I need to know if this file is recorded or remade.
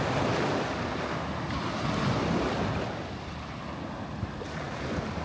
recorded